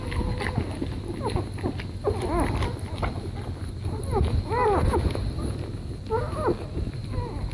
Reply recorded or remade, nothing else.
recorded